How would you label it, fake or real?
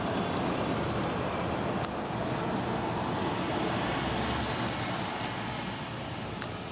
real